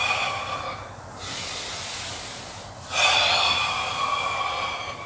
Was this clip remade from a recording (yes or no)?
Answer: no